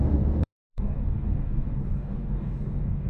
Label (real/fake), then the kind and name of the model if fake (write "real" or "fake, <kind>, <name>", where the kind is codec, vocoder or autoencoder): fake, codec, DAC